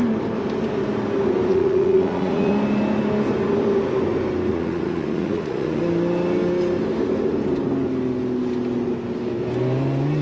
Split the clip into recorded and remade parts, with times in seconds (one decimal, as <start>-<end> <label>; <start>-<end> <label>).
0.0-1.5 recorded; 1.5-2.5 remade; 2.5-4.5 recorded; 4.5-5.8 remade; 5.8-10.2 recorded